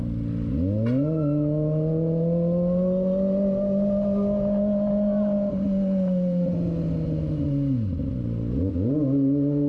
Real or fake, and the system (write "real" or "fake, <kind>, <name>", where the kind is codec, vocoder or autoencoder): real